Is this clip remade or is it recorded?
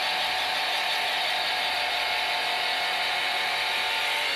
recorded